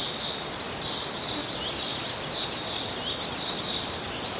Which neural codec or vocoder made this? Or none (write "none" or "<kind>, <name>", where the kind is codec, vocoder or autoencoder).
none